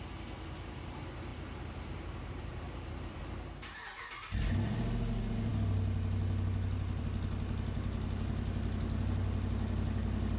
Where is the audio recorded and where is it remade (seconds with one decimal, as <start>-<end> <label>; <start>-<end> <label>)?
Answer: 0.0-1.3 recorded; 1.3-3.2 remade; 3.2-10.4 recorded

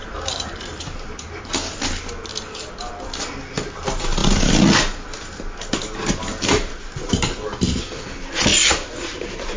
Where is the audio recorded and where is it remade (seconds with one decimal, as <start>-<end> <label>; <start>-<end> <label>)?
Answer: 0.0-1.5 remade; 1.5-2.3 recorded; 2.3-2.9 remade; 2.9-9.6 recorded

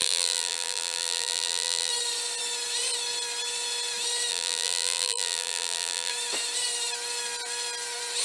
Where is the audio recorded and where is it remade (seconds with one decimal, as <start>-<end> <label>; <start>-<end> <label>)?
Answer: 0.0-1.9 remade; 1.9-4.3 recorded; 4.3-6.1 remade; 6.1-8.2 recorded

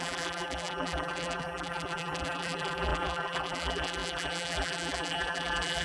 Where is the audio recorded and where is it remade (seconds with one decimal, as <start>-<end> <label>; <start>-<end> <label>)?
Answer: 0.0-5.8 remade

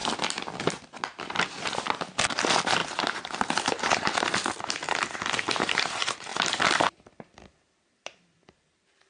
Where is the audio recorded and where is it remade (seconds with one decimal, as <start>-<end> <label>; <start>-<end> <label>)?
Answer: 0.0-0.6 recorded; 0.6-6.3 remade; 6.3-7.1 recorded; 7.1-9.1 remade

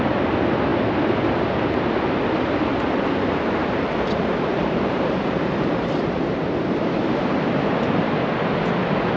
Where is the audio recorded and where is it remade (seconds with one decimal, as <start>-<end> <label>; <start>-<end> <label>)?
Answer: 0.0-3.6 recorded; 3.6-8.1 remade; 8.1-9.2 recorded

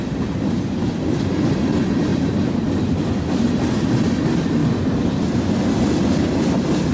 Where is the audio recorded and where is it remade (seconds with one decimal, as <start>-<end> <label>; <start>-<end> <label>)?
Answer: 0.0-2.1 recorded; 2.1-2.8 remade; 2.8-6.9 recorded

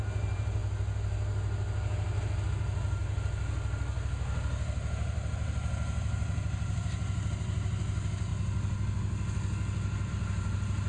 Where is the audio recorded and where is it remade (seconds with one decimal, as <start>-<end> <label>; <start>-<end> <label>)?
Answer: 0.0-0.6 remade; 0.6-2.5 recorded; 2.5-3.0 remade; 3.0-7.3 recorded; 7.3-8.3 remade; 8.3-10.1 recorded; 10.1-10.9 remade